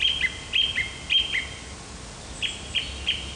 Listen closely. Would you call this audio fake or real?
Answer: real